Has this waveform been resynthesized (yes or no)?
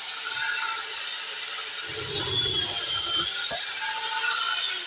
no